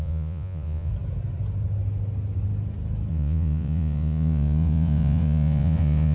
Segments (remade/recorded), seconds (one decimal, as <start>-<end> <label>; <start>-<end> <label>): 0.0-0.9 remade; 0.9-3.1 recorded; 3.1-6.1 remade